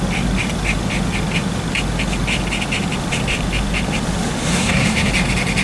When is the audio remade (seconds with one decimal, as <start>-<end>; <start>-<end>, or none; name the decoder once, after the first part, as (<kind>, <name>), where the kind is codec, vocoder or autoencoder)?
4.5-5.1 (codec, SNAC)